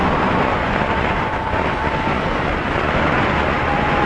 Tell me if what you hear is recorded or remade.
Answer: remade